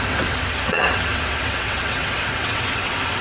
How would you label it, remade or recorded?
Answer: remade